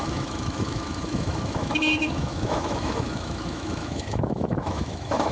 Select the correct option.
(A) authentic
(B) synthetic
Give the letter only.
B